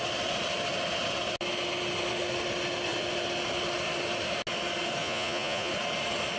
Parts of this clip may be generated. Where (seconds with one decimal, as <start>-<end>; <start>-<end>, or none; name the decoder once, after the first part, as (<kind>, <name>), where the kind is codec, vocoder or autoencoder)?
5.0-5.7 (vocoder, Vocos)